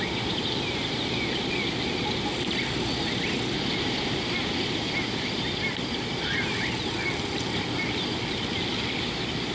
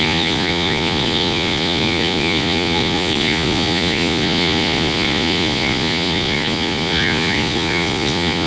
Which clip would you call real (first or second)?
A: first